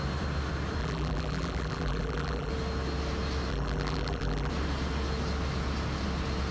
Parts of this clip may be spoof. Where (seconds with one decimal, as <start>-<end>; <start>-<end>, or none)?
0.8-2.5; 3.5-4.5